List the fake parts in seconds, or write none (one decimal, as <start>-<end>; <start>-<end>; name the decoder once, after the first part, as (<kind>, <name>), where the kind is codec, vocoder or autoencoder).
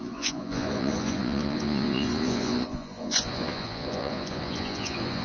0.0-5.2 (vocoder, Vocos)